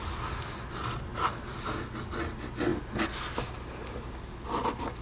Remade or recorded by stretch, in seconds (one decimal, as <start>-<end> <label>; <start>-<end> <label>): 0.0-5.0 recorded